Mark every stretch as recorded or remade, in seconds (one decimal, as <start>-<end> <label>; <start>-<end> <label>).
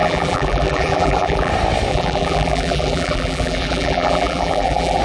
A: 0.0-1.5 remade; 1.5-1.9 recorded; 1.9-5.0 remade